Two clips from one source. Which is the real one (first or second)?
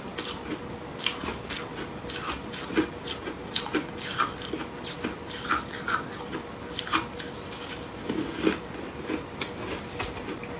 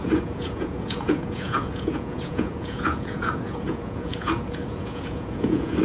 first